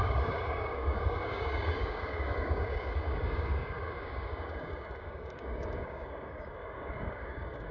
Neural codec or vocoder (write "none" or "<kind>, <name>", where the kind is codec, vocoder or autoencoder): codec, DAC